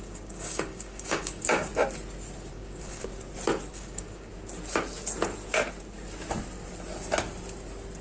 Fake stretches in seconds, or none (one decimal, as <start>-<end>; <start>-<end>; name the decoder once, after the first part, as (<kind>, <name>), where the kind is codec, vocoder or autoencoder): 0.0-1.7 (codec, DAC); 2.5-3.1; 3.7-4.3